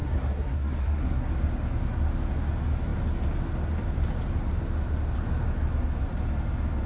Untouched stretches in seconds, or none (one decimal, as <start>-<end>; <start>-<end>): 1.3-6.9